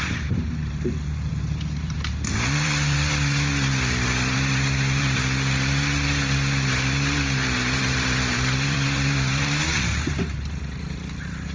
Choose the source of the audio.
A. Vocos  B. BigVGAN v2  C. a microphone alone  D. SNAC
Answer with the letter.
B